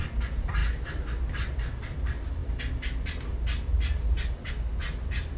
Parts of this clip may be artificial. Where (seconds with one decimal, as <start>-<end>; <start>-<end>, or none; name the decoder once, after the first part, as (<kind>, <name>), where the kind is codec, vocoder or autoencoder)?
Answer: none